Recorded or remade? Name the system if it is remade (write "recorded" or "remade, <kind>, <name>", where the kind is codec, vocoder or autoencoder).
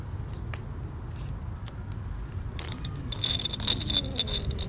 recorded